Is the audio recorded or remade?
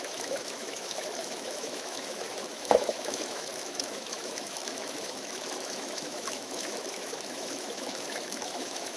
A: remade